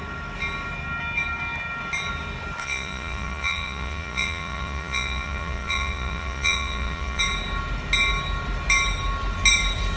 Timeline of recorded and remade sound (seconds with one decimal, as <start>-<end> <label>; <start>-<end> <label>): 0.0-2.6 recorded; 2.6-7.2 remade; 7.2-10.0 recorded